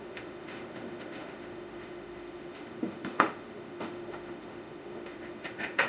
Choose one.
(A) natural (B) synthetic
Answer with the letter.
B